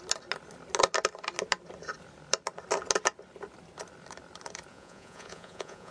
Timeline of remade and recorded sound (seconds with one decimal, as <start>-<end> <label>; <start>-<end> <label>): 0.0-4.7 recorded; 4.7-5.9 remade